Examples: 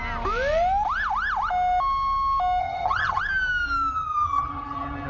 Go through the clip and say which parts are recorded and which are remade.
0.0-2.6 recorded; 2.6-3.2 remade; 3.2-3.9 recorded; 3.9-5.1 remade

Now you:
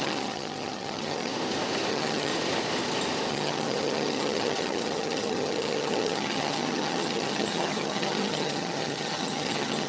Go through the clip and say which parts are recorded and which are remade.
0.0-1.3 remade; 1.3-1.9 recorded; 1.9-2.3 remade; 2.3-3.3 recorded; 3.3-9.9 remade

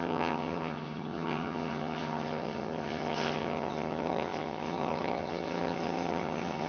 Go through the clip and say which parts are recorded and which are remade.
0.0-6.7 remade

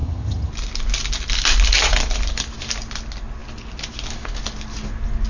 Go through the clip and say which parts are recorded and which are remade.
0.0-0.5 remade; 0.5-5.3 recorded

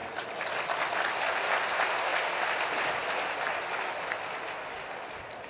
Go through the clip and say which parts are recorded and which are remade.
0.0-5.5 recorded